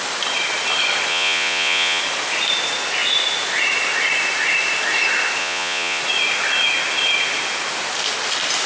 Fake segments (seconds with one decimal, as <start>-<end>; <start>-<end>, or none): 1.1-2.0; 5.4-6.0